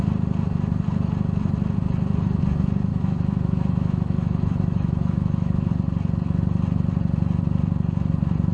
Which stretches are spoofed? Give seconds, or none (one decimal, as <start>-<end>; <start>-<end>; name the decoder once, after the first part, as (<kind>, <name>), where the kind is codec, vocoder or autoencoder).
2.9-5.7 (autoencoder, DAC-VAE)